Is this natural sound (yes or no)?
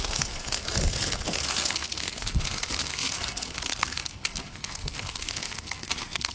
no